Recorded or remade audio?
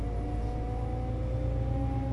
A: recorded